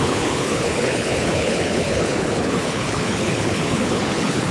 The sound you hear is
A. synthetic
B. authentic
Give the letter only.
A